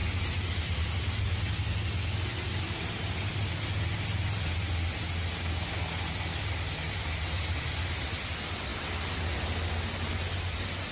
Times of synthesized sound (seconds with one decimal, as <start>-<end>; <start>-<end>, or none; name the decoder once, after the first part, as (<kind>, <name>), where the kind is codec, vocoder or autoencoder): 2.3-3.5 (vocoder, BigVGAN v2)